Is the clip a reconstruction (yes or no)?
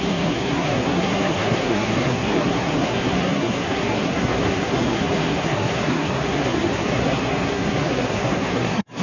yes